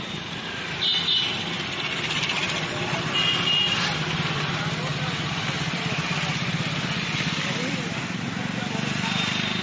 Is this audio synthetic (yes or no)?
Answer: no